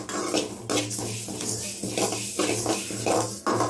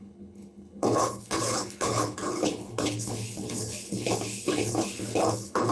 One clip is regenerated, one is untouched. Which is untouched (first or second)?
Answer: first